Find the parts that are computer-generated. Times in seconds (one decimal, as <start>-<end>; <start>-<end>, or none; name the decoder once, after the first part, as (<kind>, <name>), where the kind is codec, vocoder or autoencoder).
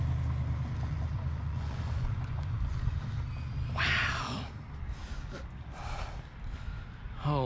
0.9-3.0 (vocoder, Vocos)